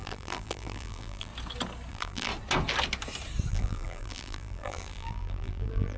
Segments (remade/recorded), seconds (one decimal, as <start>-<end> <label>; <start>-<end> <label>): 0.0-1.3 remade; 1.3-1.9 recorded; 1.9-2.3 remade; 2.3-3.5 recorded; 3.5-6.0 remade